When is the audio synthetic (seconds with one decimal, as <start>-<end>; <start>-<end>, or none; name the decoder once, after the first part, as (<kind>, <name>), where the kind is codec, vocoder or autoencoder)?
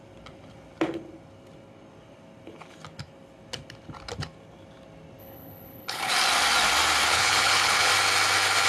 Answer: 5.2-6.1 (codec, HILCodec); 7.1-7.9